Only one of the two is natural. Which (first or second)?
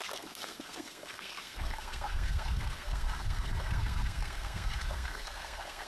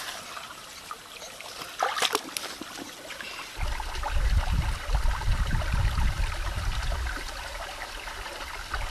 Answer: second